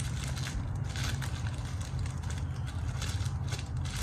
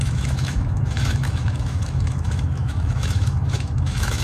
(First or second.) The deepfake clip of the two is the second